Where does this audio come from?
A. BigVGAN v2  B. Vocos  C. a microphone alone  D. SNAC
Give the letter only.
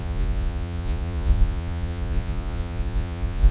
B